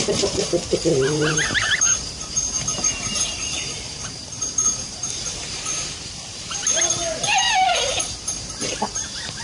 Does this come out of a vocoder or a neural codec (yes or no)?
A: yes